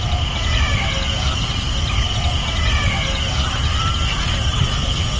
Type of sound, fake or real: real